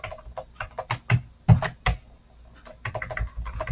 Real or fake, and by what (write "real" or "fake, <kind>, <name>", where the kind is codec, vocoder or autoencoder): real